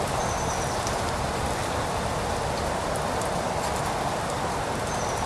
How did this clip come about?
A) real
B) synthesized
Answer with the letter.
A